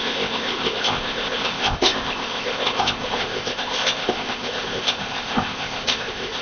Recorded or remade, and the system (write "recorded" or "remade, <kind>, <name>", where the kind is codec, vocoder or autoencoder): remade, codec, ZipCodec